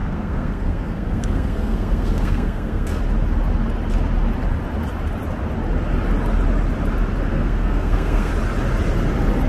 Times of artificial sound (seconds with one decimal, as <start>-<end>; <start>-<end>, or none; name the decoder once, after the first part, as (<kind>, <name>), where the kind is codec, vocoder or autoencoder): 0.0-3.0 (codec, SNAC); 7.3-8.3

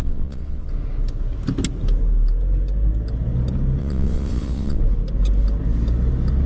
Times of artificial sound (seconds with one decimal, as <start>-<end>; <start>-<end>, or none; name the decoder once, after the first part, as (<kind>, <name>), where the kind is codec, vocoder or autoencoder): 0.0-0.7 (vocoder, WaveNeXt); 3.8-4.8